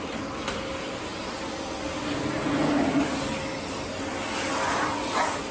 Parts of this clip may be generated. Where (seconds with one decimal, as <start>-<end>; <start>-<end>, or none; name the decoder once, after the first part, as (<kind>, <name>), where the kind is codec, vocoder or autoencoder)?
none